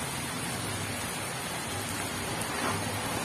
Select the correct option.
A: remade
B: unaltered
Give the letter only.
B